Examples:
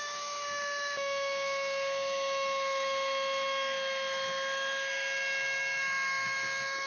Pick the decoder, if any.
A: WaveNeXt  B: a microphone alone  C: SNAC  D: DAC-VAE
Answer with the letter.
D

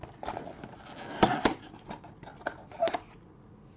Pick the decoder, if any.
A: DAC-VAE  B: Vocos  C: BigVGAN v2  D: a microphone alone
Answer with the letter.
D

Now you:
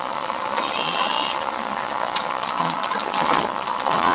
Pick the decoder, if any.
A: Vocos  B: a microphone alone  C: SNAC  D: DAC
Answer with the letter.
A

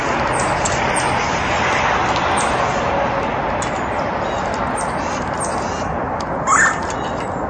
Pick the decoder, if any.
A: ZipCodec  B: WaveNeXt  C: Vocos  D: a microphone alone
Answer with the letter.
D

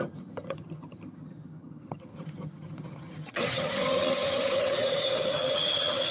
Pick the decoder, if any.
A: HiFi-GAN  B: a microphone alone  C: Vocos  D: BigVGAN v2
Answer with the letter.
A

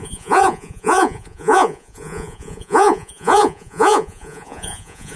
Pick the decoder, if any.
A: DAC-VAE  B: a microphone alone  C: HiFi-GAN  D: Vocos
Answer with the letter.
D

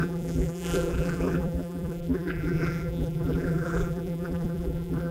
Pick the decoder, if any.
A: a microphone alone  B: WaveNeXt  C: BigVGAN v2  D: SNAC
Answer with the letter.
C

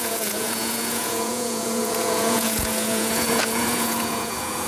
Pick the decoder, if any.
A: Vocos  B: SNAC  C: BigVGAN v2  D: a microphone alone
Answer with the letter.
A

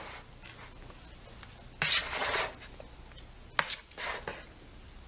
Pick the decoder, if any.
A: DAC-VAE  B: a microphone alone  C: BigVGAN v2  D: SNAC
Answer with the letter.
B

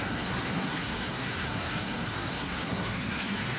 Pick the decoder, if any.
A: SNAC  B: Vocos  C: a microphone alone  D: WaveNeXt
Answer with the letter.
A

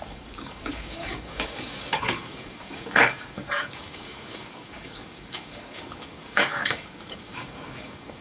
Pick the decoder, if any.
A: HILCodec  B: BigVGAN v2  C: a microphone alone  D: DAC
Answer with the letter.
D